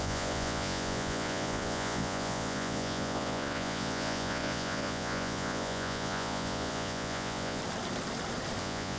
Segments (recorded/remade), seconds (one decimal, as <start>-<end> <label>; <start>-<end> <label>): 0.0-7.6 remade; 7.6-8.6 recorded; 8.6-9.0 remade